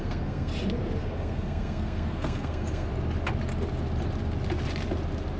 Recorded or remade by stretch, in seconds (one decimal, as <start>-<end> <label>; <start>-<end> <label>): 0.0-0.5 remade; 0.5-1.0 recorded; 1.0-2.9 remade; 2.9-5.4 recorded